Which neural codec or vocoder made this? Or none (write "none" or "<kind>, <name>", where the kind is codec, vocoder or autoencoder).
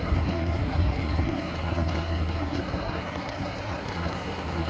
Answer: codec, SNAC